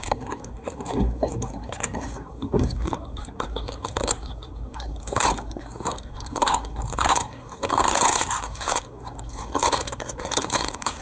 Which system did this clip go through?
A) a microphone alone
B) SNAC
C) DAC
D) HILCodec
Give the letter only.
B